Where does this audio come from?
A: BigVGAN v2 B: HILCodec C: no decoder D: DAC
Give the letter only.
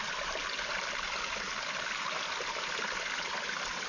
C